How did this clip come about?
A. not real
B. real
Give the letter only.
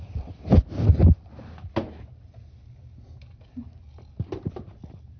B